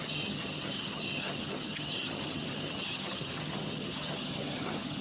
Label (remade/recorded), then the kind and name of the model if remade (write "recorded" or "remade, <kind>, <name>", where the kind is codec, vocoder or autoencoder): remade, vocoder, HiFi-GAN